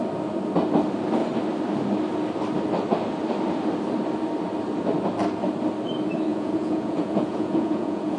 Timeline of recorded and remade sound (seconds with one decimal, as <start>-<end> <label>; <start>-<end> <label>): 0.0-6.3 recorded; 6.3-8.2 remade